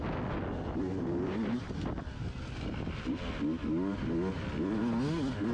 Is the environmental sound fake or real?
real